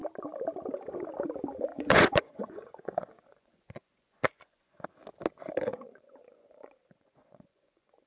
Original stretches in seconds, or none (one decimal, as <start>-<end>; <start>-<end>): 0.0-1.7; 4.9-5.7

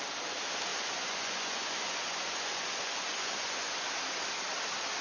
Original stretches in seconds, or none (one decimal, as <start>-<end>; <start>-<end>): 0.0-0.7; 3.7-5.0

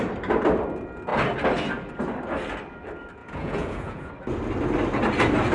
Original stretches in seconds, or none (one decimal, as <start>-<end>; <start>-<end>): 0.0-3.2; 4.1-5.5

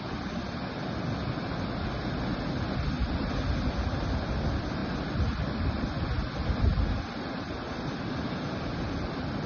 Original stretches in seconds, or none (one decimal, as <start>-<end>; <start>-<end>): 0.0-9.5

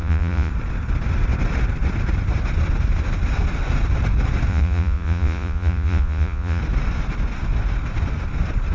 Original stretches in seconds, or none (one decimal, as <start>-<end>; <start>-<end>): 0.5-4.5; 6.6-8.7